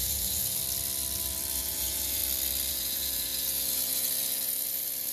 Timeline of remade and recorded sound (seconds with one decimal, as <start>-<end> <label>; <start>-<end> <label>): 0.0-0.6 remade; 0.6-1.6 recorded; 1.6-2.2 remade; 2.2-2.7 recorded; 2.7-5.1 remade